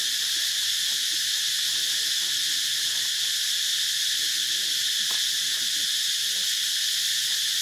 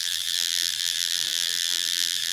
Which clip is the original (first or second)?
first